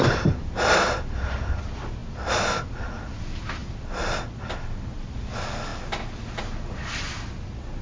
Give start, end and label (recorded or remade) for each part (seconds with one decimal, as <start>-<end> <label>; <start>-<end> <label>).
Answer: 0.0-7.8 recorded